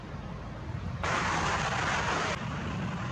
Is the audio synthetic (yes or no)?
no